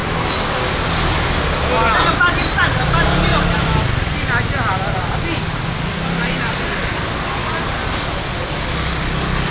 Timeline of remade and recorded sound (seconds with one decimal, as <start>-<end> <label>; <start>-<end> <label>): 0.0-0.7 remade; 0.7-9.5 recorded

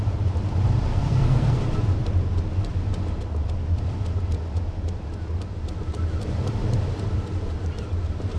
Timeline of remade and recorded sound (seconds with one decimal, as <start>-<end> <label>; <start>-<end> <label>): 0.0-0.9 recorded; 0.9-1.6 remade; 1.6-8.4 recorded

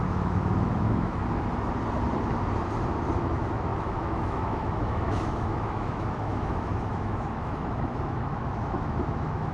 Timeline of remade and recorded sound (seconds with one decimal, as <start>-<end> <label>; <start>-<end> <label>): 0.0-1.2 remade; 1.2-3.2 recorded; 3.2-9.5 remade

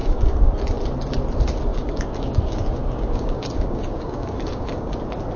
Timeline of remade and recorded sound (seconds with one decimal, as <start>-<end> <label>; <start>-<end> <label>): 0.0-0.6 remade; 0.6-1.7 recorded; 1.7-4.9 remade; 4.9-5.4 recorded

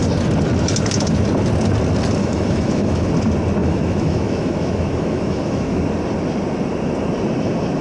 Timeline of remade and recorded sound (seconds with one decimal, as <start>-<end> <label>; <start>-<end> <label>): 0.0-2.2 recorded; 2.2-3.1 remade; 3.1-3.6 recorded; 3.6-5.8 remade; 5.8-7.8 recorded

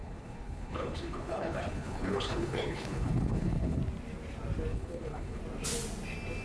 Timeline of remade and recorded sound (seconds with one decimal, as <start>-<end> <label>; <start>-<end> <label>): 0.0-3.8 remade; 3.8-4.7 recorded; 4.7-5.4 remade; 5.4-6.4 recorded

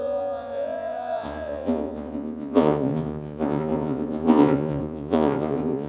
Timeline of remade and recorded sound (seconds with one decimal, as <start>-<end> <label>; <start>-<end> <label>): 0.0-5.9 remade